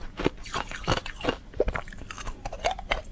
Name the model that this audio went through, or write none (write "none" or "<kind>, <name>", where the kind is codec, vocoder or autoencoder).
none